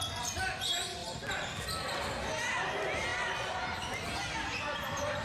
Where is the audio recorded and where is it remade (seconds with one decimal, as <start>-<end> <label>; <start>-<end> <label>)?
0.0-1.0 recorded; 1.0-2.3 remade; 2.3-5.2 recorded